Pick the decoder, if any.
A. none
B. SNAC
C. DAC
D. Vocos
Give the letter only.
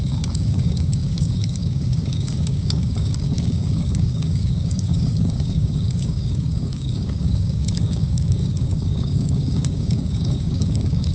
C